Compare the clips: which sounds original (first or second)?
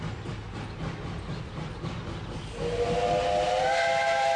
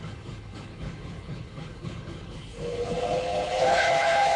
first